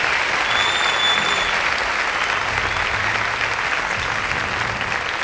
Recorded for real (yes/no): yes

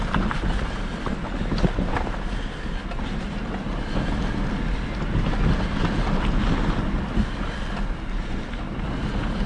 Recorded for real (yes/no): yes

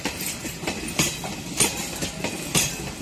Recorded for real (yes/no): yes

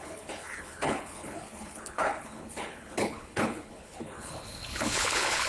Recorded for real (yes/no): no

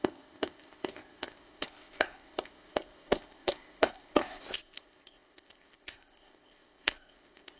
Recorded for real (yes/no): no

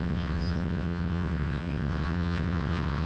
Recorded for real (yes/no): no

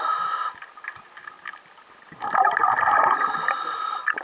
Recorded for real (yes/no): yes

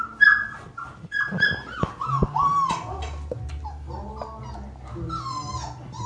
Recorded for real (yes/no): yes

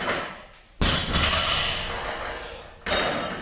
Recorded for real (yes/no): yes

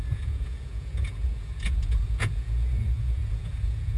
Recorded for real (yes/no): no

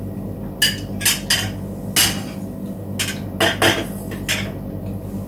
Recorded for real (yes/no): yes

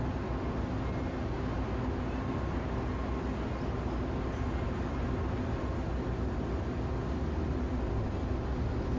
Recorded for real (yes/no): yes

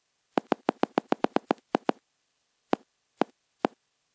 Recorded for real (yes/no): yes